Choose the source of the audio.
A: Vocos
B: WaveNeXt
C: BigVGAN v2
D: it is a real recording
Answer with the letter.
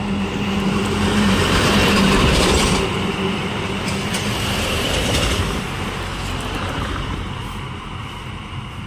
C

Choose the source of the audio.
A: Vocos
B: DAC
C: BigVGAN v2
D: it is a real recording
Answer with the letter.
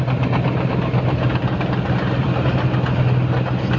D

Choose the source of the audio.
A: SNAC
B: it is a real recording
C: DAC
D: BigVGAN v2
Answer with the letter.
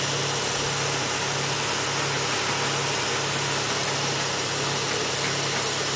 B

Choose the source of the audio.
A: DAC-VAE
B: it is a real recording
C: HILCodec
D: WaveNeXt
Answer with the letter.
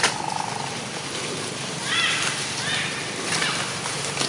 B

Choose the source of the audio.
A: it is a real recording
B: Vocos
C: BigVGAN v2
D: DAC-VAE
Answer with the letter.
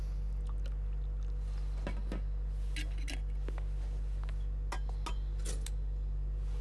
A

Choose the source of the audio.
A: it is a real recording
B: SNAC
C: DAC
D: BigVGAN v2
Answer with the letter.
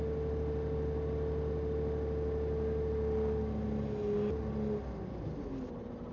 A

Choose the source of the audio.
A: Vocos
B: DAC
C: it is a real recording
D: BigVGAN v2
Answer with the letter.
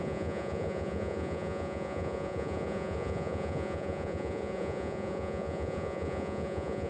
A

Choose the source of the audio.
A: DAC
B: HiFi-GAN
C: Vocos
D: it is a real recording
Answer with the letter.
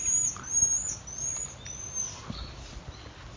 D